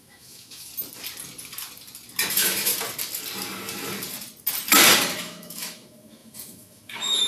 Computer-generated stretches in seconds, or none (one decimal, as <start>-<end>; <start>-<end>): 0.0-0.7; 2.3-2.7; 5.2-7.3